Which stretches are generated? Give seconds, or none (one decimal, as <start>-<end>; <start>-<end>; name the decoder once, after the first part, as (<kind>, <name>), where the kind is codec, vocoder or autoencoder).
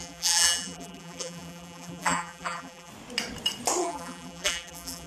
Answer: 0.0-2.9 (vocoder, BigVGAN v2); 3.8-5.1